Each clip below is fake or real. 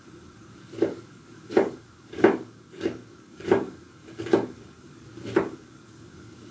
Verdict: fake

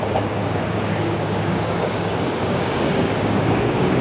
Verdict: fake